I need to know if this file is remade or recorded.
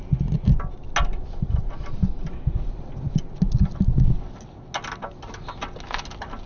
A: recorded